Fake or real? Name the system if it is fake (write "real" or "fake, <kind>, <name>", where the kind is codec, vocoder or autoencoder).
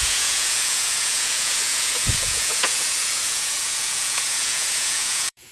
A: fake, vocoder, Vocos